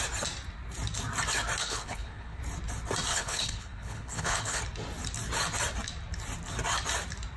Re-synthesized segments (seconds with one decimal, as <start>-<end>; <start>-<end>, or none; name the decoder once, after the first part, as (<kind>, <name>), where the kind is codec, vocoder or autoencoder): 1.6-2.4 (codec, HILCodec); 3.1-4.6